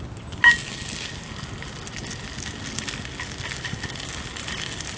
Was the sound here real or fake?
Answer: real